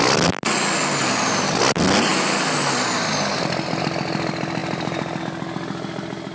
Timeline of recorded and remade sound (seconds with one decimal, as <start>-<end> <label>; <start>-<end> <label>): 0.0-1.0 recorded; 1.0-1.6 remade; 1.6-4.6 recorded; 4.6-5.2 remade; 5.2-6.3 recorded